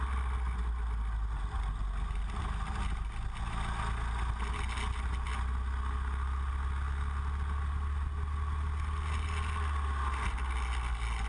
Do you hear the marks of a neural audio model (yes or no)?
no